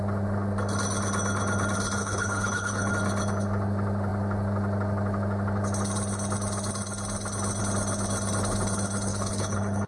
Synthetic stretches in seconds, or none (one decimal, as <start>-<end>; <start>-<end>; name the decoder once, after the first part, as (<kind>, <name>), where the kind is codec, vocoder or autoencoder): 2.0-2.9 (codec, HILCodec); 9.1-9.9